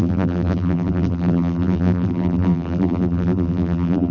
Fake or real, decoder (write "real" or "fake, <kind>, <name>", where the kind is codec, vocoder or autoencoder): fake, vocoder, BigVGAN v2